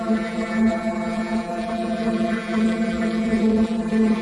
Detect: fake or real fake